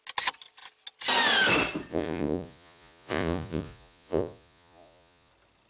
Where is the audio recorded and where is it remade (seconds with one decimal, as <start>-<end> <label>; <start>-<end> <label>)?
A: 0.0-1.9 recorded; 1.9-5.3 remade; 5.3-5.7 recorded